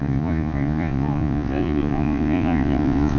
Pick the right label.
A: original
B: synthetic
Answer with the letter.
B